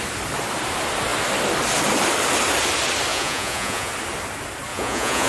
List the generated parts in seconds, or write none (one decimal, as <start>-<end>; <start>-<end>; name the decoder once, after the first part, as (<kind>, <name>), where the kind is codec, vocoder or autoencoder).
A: 3.1-3.9 (vocoder, Vocos); 4.7-5.3